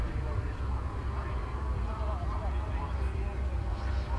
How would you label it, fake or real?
real